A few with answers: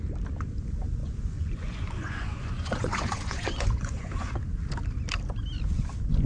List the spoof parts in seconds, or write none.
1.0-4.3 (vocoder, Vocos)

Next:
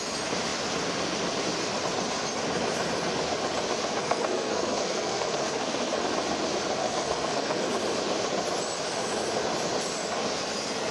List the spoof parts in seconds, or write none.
4.0-6.0 (codec, SNAC); 6.8-7.7

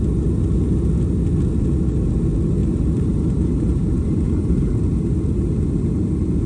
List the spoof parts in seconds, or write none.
2.6-4.7 (vocoder, BigVGAN v2)

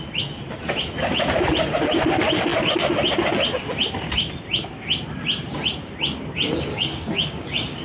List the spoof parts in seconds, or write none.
6.7-7.8 (codec, DAC)

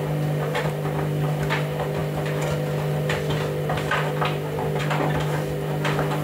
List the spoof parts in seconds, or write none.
0.0-6.2 (vocoder, BigVGAN v2)

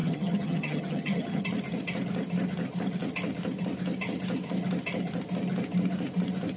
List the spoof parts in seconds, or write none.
0.0-1.4 (vocoder, HiFi-GAN)

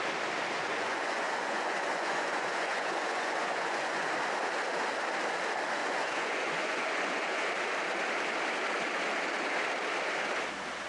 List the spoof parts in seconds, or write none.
0.6-4.1 (vocoder, Vocos); 5.8-7.5